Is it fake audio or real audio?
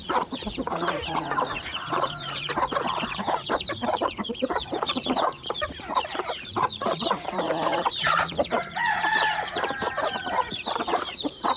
fake